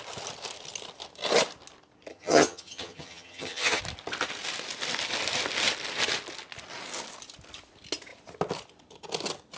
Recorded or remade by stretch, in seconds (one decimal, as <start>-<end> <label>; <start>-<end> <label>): 0.0-2.1 recorded; 2.1-3.8 remade; 3.8-9.6 recorded